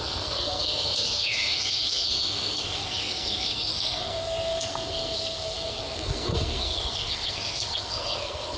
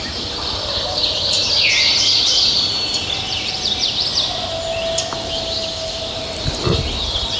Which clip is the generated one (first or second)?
first